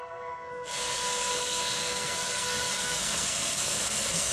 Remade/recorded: remade